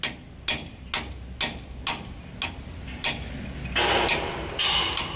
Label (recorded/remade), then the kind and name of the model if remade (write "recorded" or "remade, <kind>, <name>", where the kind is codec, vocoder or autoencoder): recorded